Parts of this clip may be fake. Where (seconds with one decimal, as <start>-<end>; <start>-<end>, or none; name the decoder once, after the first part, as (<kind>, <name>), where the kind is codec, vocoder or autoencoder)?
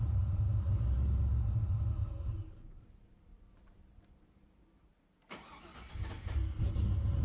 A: 0.0-4.9 (vocoder, BigVGAN v2)